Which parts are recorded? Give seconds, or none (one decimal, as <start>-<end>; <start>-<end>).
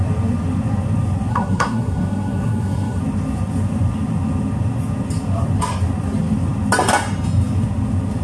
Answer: 0.0-1.3; 3.0-8.2